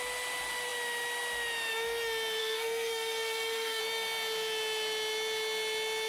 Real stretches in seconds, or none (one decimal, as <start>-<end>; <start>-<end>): 0.0-2.4; 3.8-6.1